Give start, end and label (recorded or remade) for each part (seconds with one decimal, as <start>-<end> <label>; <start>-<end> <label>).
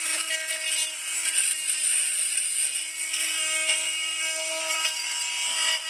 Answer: 0.0-2.9 recorded; 2.9-4.6 remade; 4.6-5.9 recorded